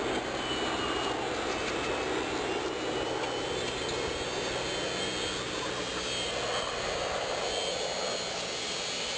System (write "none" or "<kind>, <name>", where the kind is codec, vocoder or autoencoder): none